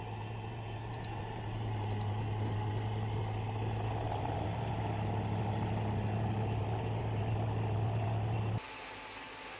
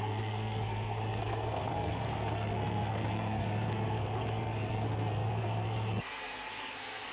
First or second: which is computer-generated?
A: second